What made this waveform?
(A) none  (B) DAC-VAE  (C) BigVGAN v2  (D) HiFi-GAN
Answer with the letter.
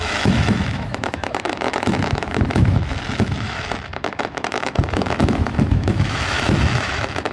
B